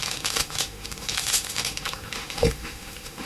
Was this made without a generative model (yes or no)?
no